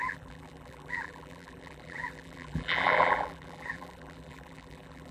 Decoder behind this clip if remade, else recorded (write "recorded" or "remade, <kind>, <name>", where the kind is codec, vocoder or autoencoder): remade, vocoder, BigVGAN v2